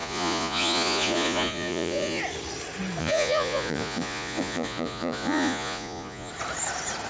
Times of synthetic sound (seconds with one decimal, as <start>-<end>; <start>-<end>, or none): 0.0-2.2; 3.0-6.3